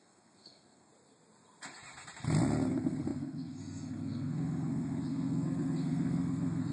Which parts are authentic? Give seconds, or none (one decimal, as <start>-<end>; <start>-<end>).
0.9-2.7